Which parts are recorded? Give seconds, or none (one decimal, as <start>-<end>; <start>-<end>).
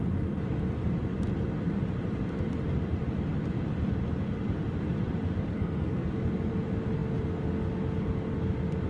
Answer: 0.0-5.5; 6.1-8.9